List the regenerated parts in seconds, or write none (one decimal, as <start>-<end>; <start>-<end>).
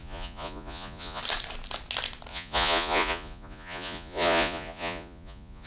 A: 0.0-1.2; 2.3-5.7